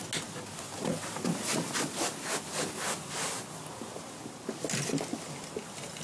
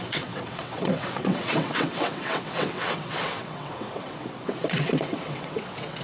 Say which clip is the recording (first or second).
first